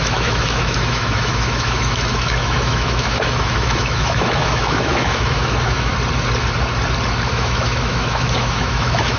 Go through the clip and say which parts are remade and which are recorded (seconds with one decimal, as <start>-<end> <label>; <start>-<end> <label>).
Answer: 0.0-5.9 remade; 5.9-7.3 recorded; 7.3-9.2 remade